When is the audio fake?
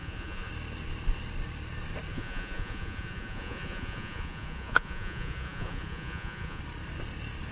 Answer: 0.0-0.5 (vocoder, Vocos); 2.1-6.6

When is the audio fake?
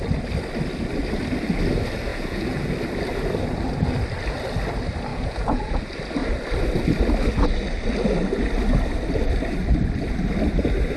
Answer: 2.1-2.7 (vocoder, Vocos); 5.1-5.8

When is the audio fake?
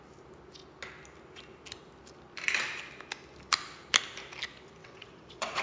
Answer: 4.8-5.6 (vocoder, WaveNeXt)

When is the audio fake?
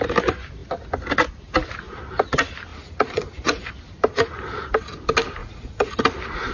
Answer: 2.7-3.7 (vocoder, Vocos); 5.4-5.9